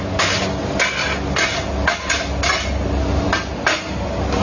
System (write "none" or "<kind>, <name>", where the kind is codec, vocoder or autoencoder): none